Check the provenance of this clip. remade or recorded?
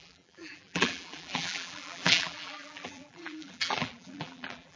remade